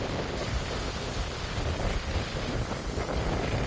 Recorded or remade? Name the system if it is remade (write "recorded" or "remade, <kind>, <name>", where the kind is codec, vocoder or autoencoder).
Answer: recorded